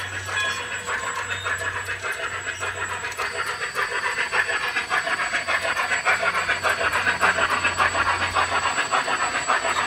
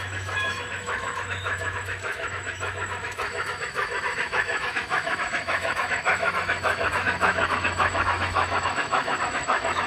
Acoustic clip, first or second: first